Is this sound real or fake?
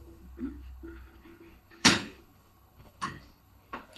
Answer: fake